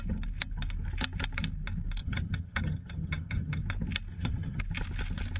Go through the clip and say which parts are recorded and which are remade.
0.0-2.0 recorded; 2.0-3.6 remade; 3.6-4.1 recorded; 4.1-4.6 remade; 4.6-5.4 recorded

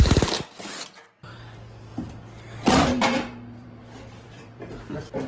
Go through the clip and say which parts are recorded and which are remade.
0.0-1.9 remade; 1.9-2.7 recorded; 2.7-5.3 remade